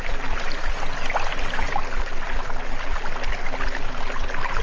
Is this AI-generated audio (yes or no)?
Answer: no